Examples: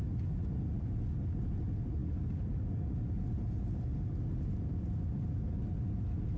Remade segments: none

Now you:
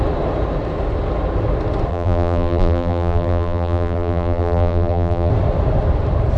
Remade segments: 1.9-5.3 (vocoder, BigVGAN v2)

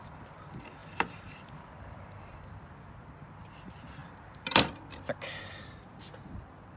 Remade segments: 0.0-6.8 (vocoder, BigVGAN v2)

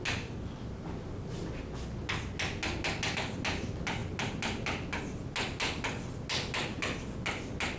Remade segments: none

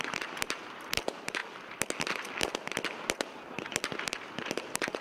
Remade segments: 0.0-1.4 (vocoder, BigVGAN v2); 3.9-5.0

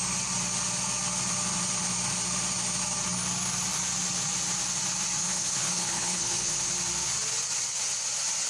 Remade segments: 5.2-6.7 (codec, HILCodec)